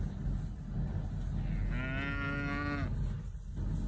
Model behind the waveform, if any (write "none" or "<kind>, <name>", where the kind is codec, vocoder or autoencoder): none